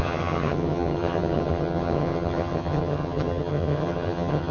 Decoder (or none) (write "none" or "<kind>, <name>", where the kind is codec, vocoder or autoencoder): vocoder, HiFi-GAN